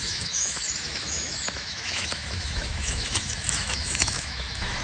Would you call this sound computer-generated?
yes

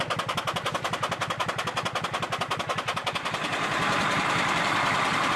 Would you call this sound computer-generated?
no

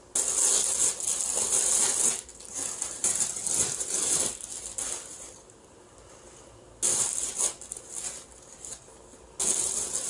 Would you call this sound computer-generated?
no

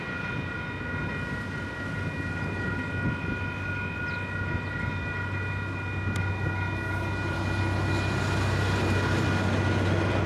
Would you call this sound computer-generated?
no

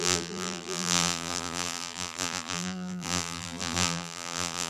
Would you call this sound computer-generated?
yes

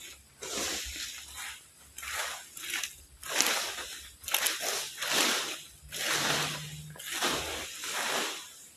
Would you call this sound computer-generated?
no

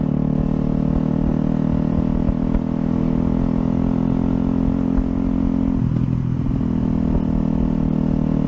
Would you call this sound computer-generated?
no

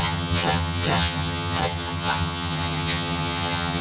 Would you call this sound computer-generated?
yes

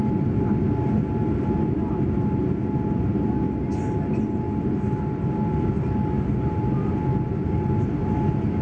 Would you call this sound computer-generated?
no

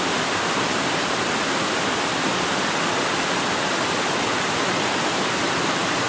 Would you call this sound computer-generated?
no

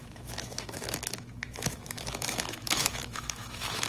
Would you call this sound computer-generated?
yes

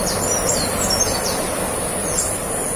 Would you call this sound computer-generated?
no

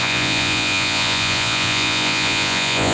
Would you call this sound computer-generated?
yes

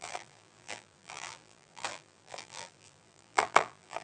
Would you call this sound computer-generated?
yes